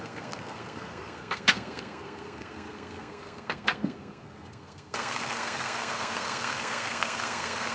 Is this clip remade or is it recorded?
remade